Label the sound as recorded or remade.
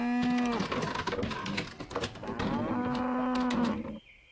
recorded